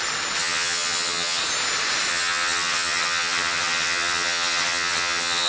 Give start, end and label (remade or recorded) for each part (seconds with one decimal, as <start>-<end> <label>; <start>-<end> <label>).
0.0-0.4 recorded; 0.4-1.4 remade; 1.4-2.1 recorded; 2.1-5.5 remade